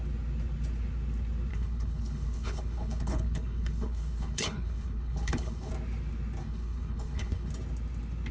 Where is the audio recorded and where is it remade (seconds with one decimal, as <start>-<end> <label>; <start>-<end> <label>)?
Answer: 0.0-1.5 recorded; 1.5-5.7 remade; 5.7-6.4 recorded; 6.4-7.5 remade; 7.5-8.3 recorded